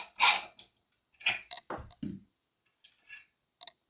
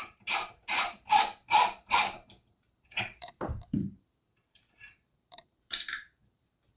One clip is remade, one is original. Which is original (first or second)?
first